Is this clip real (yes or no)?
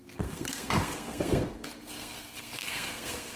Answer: no